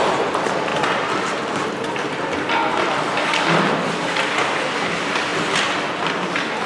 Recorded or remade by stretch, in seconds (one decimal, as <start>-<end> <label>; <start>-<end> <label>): 0.0-6.7 recorded